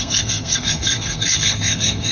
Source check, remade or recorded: remade